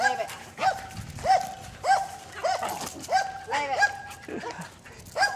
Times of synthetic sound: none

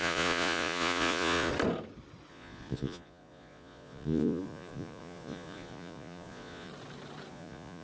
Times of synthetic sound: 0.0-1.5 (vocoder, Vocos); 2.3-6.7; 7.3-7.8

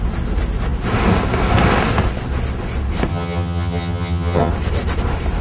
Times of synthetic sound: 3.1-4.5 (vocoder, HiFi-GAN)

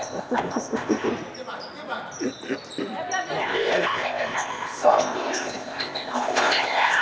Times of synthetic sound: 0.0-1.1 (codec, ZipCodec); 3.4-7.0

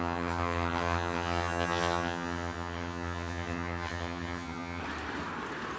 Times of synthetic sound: 0.0-4.8 (vocoder, HiFi-GAN)

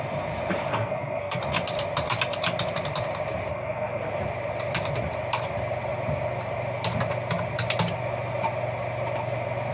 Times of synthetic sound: 0.7-1.4 (codec, SNAC); 3.5-4.1